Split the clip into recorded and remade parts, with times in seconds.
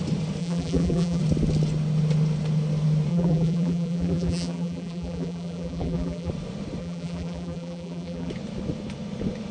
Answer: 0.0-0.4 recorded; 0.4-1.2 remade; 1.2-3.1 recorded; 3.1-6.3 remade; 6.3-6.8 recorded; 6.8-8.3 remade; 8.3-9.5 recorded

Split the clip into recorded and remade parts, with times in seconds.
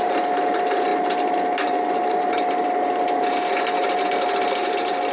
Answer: 0.0-5.1 recorded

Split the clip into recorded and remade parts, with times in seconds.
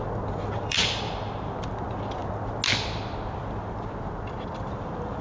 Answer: 0.0-0.8 remade; 0.8-1.8 recorded; 1.8-2.2 remade; 2.2-4.7 recorded; 4.7-5.2 remade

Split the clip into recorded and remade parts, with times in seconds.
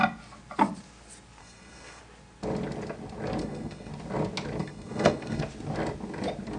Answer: 0.0-1.4 recorded; 1.4-2.0 remade; 2.0-3.4 recorded; 3.4-3.9 remade; 3.9-4.6 recorded; 4.6-5.4 remade; 5.4-6.6 recorded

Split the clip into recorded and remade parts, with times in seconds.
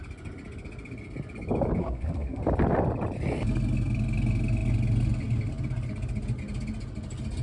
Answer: 0.0-1.8 recorded; 1.8-2.4 remade; 2.4-7.4 recorded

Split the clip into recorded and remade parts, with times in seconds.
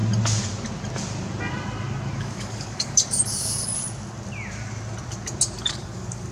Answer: 0.0-2.2 recorded; 2.2-3.7 remade; 3.7-5.7 recorded; 5.7-6.3 remade